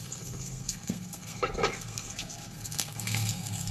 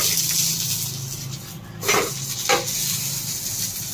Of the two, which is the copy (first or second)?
first